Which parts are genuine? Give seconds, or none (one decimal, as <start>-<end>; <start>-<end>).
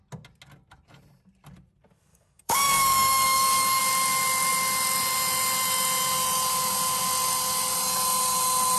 0.0-2.1; 3.8-8.8